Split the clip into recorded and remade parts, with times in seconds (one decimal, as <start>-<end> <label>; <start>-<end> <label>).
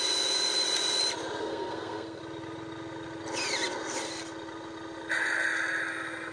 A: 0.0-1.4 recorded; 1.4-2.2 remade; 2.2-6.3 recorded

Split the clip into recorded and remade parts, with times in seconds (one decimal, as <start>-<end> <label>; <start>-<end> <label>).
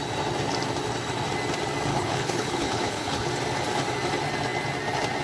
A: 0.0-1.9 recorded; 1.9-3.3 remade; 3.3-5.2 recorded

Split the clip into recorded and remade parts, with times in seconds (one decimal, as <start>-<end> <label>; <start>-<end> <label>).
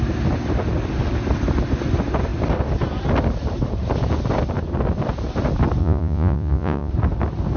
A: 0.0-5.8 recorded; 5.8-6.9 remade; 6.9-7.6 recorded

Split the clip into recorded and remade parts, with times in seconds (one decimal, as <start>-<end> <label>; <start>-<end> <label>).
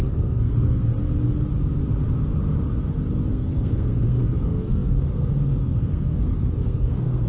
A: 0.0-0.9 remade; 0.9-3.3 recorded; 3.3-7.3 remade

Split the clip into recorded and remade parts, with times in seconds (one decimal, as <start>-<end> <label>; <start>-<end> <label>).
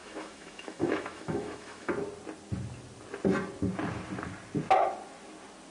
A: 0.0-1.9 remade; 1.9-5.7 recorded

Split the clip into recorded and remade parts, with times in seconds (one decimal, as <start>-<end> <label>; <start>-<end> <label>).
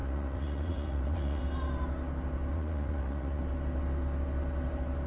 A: 0.0-1.4 remade; 1.4-2.5 recorded; 2.5-3.4 remade; 3.4-5.1 recorded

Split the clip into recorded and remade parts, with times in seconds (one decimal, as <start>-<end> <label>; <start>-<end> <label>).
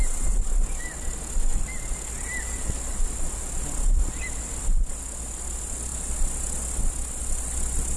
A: 0.0-8.0 recorded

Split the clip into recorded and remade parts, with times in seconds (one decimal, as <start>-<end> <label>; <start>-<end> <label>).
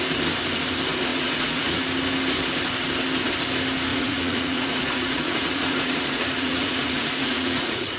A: 0.0-1.1 recorded; 1.1-1.8 remade; 1.8-3.9 recorded; 3.9-8.0 remade